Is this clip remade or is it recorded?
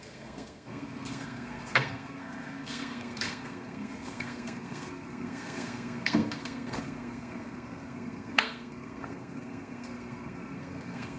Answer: remade